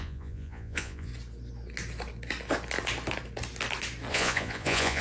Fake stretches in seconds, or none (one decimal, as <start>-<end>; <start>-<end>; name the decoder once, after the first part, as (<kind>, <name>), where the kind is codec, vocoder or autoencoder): 0.0-1.1 (vocoder, Vocos); 4.1-5.0